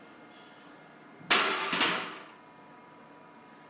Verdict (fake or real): real